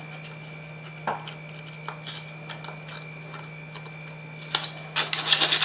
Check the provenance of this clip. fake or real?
real